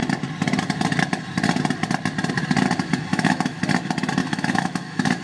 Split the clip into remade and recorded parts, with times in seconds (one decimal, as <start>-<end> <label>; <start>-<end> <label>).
0.0-3.1 recorded; 3.1-3.6 remade; 3.6-4.2 recorded; 4.2-5.2 remade